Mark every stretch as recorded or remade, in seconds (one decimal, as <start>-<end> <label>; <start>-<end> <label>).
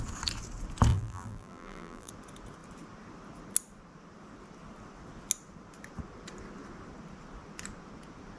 0.0-0.9 recorded; 0.9-2.1 remade; 2.1-8.4 recorded